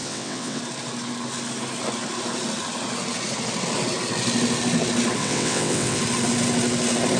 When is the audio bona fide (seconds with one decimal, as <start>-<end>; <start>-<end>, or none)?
0.6-5.2; 6.0-7.2